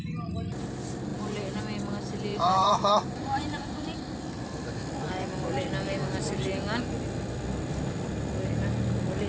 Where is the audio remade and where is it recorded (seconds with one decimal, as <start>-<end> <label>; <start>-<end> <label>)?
0.0-1.1 recorded; 1.1-1.6 remade; 1.6-2.3 recorded; 2.3-4.0 remade; 4.0-9.3 recorded